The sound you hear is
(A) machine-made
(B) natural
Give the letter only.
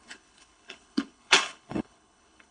A